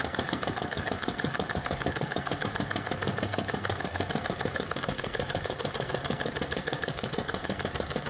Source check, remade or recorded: remade